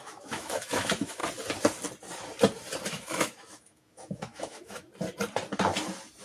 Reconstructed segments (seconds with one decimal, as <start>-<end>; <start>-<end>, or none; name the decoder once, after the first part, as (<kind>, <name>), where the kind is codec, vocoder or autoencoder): 0.0-1.2 (autoencoder, DAC-VAE); 2.9-4.9